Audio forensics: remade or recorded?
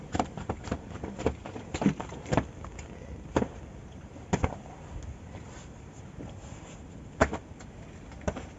recorded